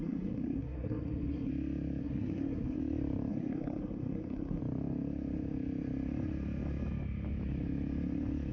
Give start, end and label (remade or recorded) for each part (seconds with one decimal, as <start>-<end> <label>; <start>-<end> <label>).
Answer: 0.0-1.5 remade; 1.5-2.0 recorded; 2.0-2.8 remade; 2.8-3.3 recorded; 3.3-4.6 remade; 4.6-8.5 recorded